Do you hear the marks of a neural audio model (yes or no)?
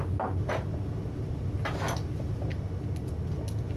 no